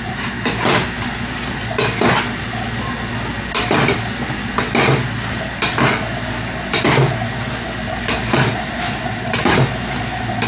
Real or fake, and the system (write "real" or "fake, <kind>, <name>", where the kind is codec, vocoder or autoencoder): real